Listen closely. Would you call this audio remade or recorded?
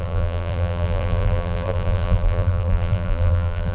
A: remade